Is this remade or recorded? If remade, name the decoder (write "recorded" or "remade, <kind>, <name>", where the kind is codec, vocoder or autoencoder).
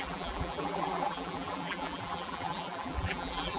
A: remade, vocoder, BigVGAN v2